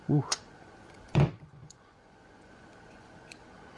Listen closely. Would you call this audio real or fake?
fake